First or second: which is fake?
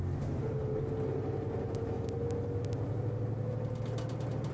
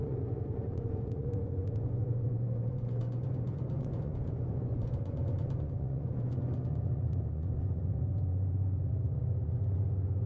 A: second